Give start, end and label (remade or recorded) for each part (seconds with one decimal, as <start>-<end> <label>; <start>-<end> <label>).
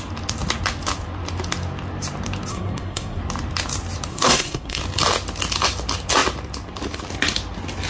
0.0-2.5 recorded; 2.5-3.2 remade; 3.2-4.1 recorded; 4.1-4.8 remade; 4.8-7.9 recorded